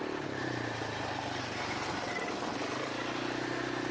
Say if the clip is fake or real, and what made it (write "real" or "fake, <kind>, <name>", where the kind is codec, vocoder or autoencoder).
real